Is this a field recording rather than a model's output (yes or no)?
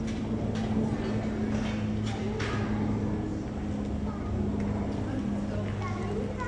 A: yes